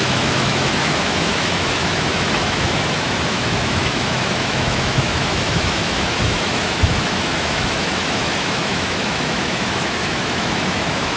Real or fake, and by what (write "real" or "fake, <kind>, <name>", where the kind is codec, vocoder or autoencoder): fake, autoencoder, DAC-VAE